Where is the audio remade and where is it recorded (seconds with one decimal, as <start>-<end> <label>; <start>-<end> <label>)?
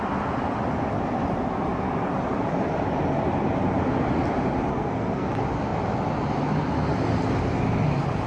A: 0.0-4.7 recorded; 4.7-5.3 remade; 5.3-8.3 recorded